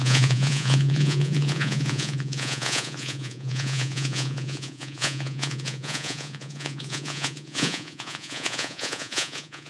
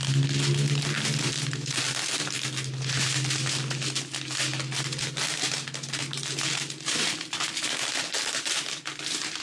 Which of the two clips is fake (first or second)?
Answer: first